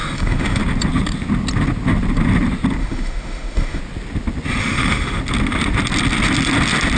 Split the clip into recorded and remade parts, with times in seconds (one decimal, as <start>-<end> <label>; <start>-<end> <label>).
0.0-0.6 remade; 0.6-2.8 recorded; 2.8-3.8 remade; 3.8-4.6 recorded; 4.6-5.2 remade; 5.2-7.0 recorded